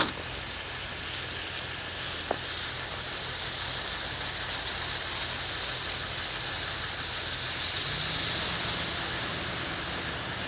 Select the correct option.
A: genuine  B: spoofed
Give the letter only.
A